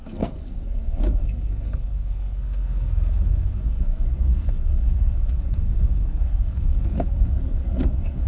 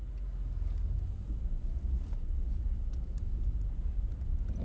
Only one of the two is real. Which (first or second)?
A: second